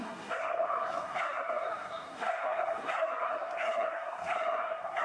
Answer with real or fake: fake